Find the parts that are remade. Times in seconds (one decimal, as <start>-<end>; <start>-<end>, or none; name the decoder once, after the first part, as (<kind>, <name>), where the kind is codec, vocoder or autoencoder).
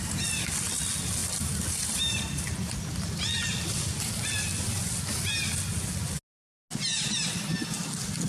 none